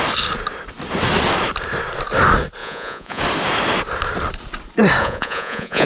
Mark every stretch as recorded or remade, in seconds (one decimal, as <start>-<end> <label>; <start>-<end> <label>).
0.0-2.6 recorded; 2.6-3.2 remade; 3.2-5.0 recorded; 5.0-5.9 remade